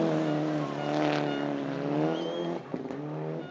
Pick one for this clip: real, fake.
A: real